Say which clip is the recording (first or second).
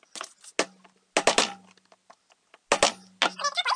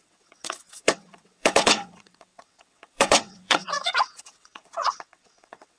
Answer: first